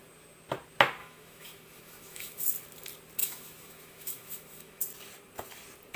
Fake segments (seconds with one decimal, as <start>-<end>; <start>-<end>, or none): 1.0-2.4; 3.2-4.8